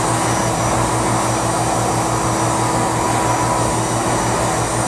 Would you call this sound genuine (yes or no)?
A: yes